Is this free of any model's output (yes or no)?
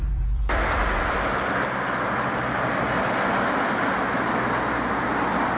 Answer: yes